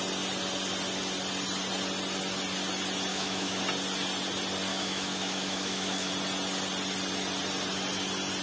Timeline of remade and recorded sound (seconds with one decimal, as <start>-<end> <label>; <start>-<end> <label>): 0.0-3.1 recorded; 3.1-3.6 remade; 3.6-4.7 recorded; 4.7-6.1 remade; 6.1-8.4 recorded